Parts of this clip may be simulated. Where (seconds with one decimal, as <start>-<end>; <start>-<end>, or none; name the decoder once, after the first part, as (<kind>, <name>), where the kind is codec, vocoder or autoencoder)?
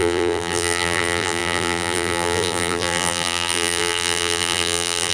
0.0-5.1 (vocoder, BigVGAN v2)